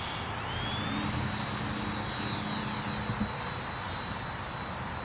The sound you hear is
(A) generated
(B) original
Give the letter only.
B